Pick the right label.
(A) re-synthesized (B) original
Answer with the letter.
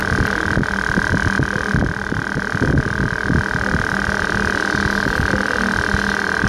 B